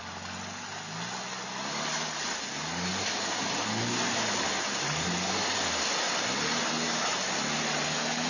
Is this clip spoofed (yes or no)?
no